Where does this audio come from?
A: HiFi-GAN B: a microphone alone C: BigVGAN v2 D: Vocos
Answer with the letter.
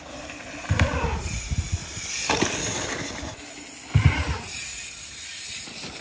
B